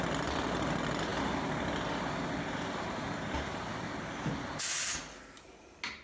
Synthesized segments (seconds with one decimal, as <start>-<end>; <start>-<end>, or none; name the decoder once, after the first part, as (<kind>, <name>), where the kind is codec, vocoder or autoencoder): none